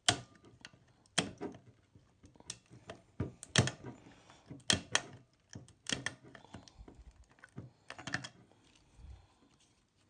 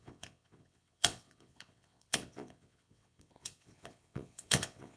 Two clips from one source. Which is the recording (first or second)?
first